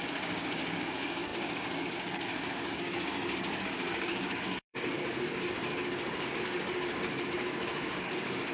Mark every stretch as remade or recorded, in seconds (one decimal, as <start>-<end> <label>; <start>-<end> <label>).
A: 0.0-8.5 remade